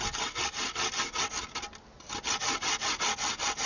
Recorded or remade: recorded